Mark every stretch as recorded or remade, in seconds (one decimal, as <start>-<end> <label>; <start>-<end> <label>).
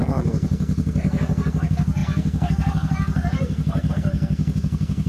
0.0-5.1 remade